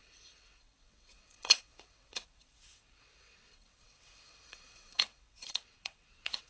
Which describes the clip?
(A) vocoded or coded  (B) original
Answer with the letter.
A